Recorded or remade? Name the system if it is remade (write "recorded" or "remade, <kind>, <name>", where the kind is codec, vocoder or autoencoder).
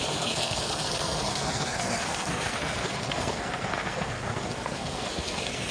remade, codec, SNAC